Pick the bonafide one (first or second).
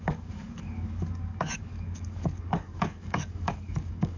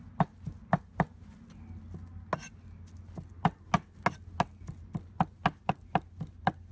second